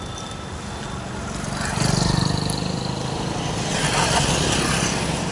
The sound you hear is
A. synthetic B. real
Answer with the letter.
B